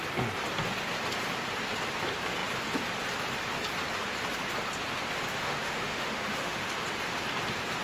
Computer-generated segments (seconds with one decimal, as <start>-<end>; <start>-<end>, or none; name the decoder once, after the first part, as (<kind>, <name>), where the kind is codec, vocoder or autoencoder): 5.3-6.7 (autoencoder, DAC-VAE)